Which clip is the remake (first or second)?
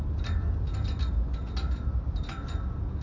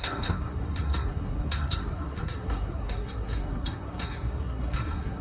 second